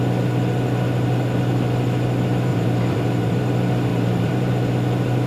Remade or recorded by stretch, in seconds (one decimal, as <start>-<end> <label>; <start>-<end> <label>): 0.0-2.5 recorded; 2.5-3.4 remade; 3.4-3.9 recorded; 3.9-4.5 remade; 4.5-5.3 recorded